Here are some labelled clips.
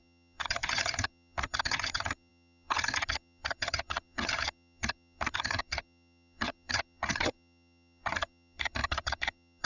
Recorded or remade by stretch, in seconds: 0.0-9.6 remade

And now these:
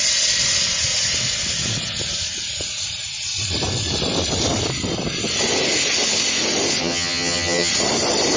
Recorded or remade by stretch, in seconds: 0.0-6.8 recorded; 6.8-7.7 remade; 7.7-8.4 recorded

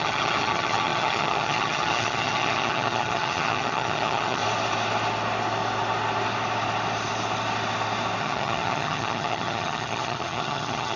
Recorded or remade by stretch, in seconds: 0.0-4.4 remade; 4.4-8.2 recorded; 8.2-11.0 remade

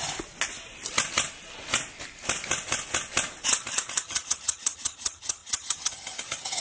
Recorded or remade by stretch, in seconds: 0.0-4.0 recorded; 4.0-6.6 remade